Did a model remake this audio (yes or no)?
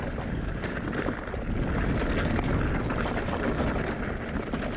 no